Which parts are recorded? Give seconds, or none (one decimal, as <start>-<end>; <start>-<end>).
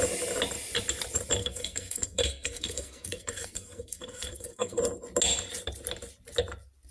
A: 0.0-1.4; 4.8-6.9